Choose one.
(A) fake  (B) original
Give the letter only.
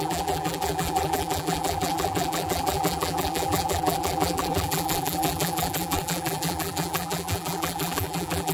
A